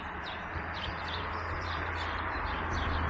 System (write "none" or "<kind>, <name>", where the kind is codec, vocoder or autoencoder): vocoder, BigVGAN v2